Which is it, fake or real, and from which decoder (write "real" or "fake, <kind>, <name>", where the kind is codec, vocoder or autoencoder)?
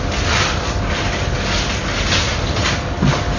real